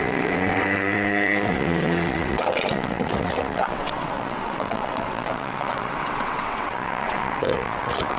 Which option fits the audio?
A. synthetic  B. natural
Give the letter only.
A